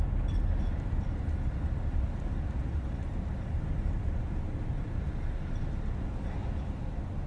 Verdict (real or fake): real